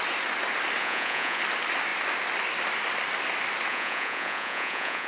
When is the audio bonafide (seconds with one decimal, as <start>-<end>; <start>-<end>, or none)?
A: 0.0-0.8; 1.4-3.7